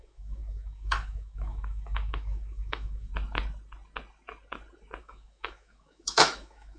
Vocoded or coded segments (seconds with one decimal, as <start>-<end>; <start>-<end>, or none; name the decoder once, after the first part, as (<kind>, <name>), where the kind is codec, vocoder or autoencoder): 0.0-3.1 (autoencoder, DAC-VAE); 5.0-6.8